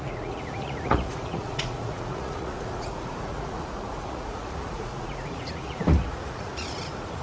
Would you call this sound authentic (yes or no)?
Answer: no